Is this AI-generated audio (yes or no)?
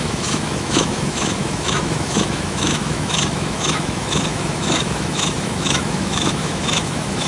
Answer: yes